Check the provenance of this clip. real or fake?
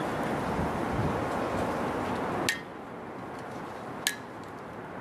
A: real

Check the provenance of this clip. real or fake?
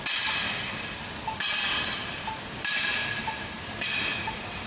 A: real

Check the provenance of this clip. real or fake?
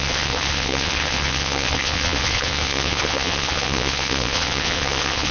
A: fake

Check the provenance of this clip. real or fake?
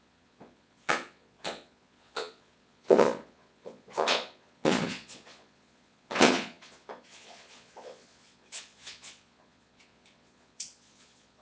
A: fake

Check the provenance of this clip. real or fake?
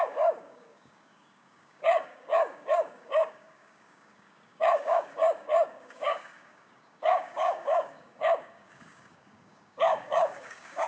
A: fake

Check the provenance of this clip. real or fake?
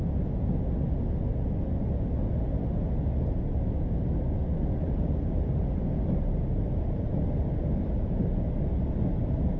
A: real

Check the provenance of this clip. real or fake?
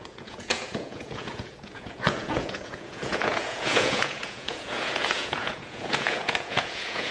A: fake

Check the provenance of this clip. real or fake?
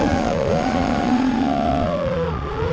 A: fake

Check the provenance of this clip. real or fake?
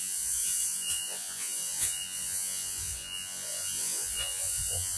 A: fake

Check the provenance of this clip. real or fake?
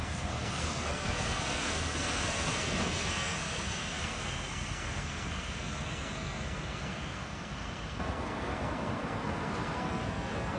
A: fake